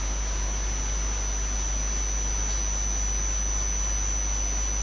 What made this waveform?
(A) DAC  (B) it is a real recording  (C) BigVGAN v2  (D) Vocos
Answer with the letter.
B